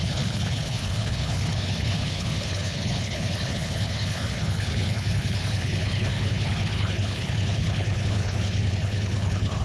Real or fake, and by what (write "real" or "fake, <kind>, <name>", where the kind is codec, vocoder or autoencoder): fake, codec, HILCodec